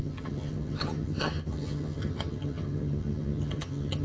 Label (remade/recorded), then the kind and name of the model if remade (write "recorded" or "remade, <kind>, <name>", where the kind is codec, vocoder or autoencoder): remade, vocoder, HiFi-GAN